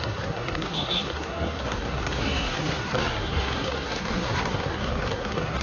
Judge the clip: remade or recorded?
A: remade